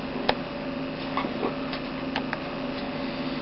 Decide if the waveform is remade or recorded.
recorded